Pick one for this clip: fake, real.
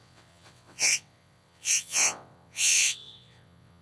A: fake